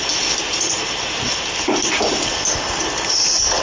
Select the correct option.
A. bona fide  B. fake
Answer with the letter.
A